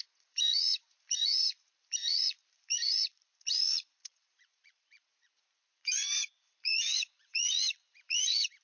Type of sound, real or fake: fake